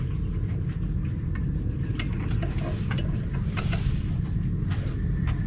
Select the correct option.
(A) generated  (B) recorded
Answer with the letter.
B